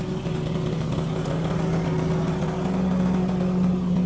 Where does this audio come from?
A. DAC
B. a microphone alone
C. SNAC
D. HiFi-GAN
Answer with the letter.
B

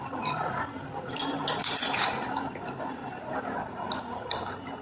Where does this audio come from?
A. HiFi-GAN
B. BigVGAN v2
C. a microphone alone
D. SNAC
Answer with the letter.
C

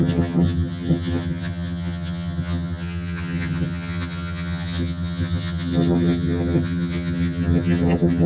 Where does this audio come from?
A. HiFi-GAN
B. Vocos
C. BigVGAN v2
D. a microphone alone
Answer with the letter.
A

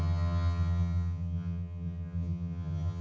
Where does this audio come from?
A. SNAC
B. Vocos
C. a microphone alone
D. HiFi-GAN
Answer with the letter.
D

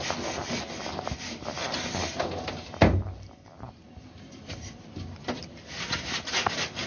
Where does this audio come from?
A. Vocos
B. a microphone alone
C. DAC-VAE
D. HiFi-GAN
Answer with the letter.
B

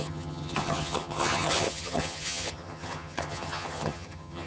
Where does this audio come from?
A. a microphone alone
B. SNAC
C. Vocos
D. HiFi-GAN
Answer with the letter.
D